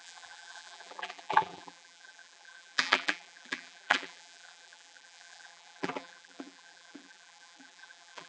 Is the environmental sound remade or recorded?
remade